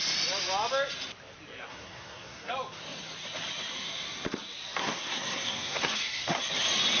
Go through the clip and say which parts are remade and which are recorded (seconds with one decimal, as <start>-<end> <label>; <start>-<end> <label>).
0.0-1.7 recorded; 1.7-2.5 remade; 2.5-4.8 recorded; 4.8-6.4 remade; 6.4-7.0 recorded